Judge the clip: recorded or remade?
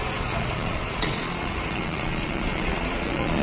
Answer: remade